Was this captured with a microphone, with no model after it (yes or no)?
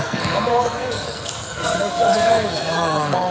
no